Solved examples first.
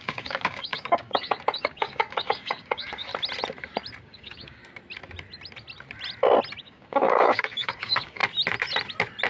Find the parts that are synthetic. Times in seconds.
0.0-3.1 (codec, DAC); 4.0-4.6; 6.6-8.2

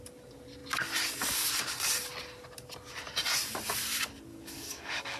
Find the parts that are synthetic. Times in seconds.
4.3-5.2 (codec, DAC)

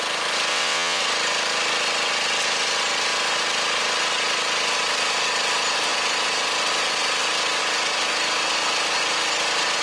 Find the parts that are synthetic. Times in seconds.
0.5-1.0 (vocoder, WaveNeXt)

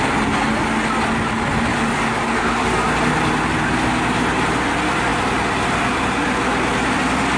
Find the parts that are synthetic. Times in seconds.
1.7-2.8 (codec, DAC)

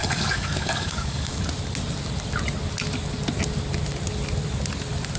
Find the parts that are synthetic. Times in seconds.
0.0-1.4 (codec, DAC)

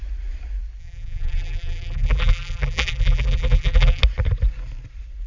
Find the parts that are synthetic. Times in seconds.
0.8-4.0 (vocoder, BigVGAN v2)

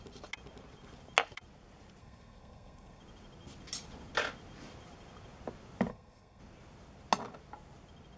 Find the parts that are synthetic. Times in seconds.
2.0-3.0 (codec, SNAC); 5.9-6.4